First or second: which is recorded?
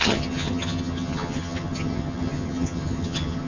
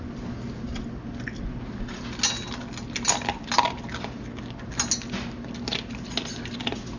second